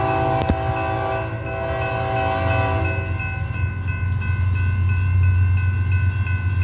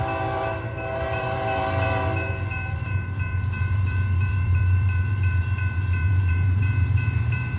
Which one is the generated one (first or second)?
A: second